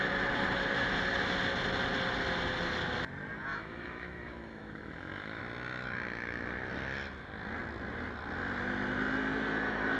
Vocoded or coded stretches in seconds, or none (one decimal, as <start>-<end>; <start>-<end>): 3.5-5.4